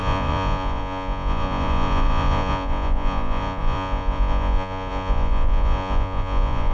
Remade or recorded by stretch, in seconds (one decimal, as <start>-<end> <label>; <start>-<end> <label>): 0.0-6.7 remade

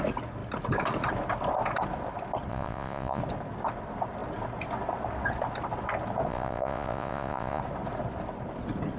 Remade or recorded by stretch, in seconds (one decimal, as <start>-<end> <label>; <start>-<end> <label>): 0.0-2.5 recorded; 2.5-3.2 remade; 3.2-6.3 recorded; 6.3-7.6 remade; 7.6-9.0 recorded

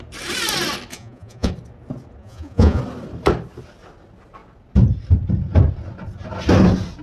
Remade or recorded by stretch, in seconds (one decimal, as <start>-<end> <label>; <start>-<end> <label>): 0.0-0.9 recorded; 0.9-1.5 remade; 1.5-2.2 recorded; 2.2-2.8 remade; 2.8-7.0 recorded

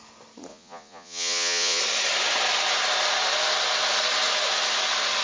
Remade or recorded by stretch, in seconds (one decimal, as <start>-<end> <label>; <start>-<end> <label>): 0.0-0.5 recorded; 0.5-1.8 remade; 1.8-5.2 recorded

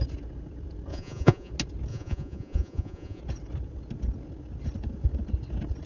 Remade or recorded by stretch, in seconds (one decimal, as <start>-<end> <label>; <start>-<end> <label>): 0.0-0.9 recorded; 0.9-1.5 remade; 1.5-1.9 recorded; 1.9-3.2 remade; 3.2-5.9 recorded

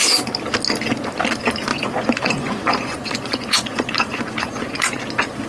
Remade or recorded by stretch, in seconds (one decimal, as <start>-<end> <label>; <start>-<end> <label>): 0.0-1.7 recorded; 1.7-5.0 remade; 5.0-5.5 recorded

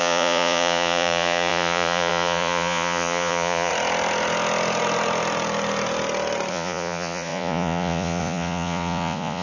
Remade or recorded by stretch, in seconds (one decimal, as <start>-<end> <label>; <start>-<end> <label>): 0.0-3.7 remade; 3.7-6.5 recorded; 6.5-9.4 remade

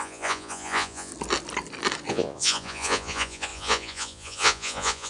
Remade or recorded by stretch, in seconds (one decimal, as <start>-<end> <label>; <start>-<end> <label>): 0.0-1.1 remade; 1.1-2.1 recorded; 2.1-5.1 remade